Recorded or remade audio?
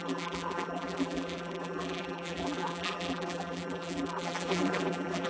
remade